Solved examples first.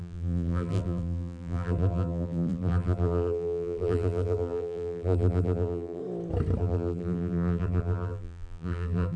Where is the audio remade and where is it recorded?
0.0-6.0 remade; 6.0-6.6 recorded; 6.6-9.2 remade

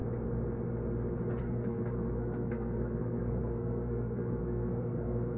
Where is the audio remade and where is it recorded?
0.0-1.4 recorded; 1.4-5.4 remade

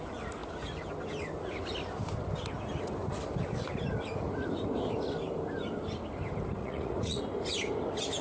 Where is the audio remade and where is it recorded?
0.0-6.6 recorded; 6.6-7.2 remade; 7.2-8.2 recorded

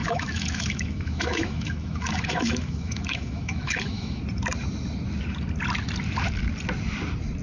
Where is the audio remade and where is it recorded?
0.0-4.2 remade; 4.2-7.4 recorded

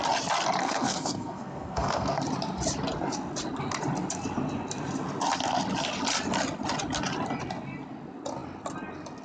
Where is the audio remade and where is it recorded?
0.0-0.6 recorded; 0.6-2.2 remade; 2.2-9.2 recorded